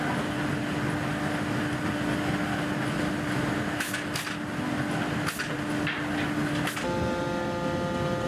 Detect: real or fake real